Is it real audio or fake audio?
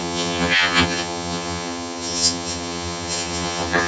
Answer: fake